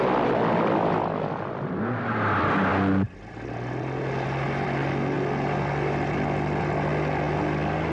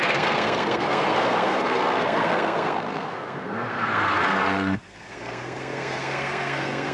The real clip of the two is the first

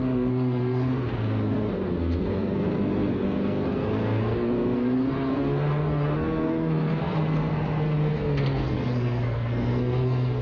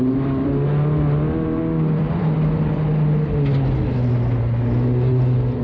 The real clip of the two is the second